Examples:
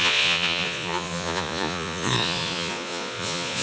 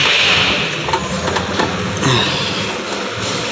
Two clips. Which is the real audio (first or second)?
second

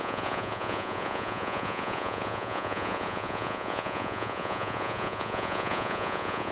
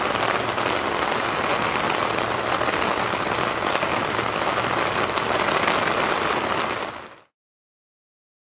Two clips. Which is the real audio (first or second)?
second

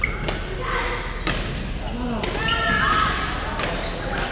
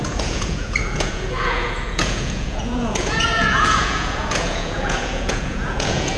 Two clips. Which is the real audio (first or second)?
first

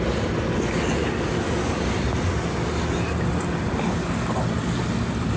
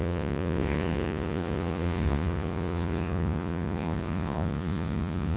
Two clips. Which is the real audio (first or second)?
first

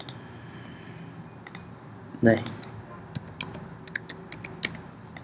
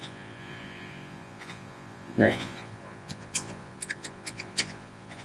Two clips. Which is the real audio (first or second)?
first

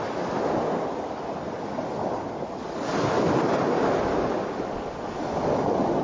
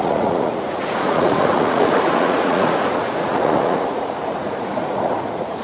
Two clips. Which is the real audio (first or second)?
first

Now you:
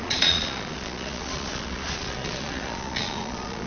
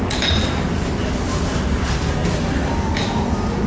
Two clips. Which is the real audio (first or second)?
second